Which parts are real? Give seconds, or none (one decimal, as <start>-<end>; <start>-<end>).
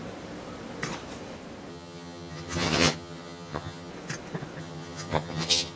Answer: 0.0-1.7; 3.9-4.6